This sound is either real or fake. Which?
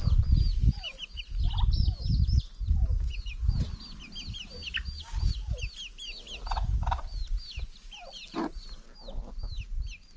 real